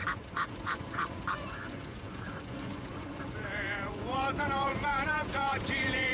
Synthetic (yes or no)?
yes